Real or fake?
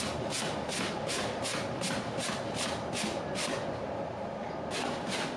real